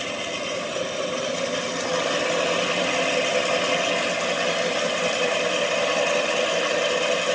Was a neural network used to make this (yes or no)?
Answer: no